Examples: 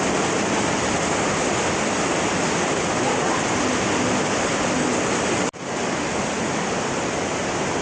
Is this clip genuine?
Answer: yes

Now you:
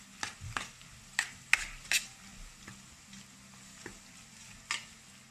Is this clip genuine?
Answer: yes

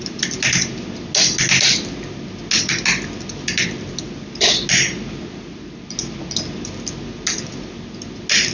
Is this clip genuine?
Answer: yes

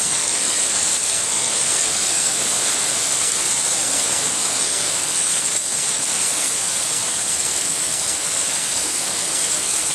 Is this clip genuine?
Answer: no